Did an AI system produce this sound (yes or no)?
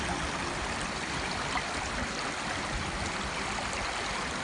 no